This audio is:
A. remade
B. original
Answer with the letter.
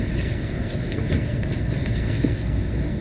A